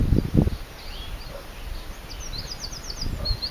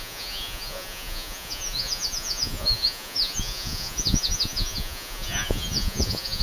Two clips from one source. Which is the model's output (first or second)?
second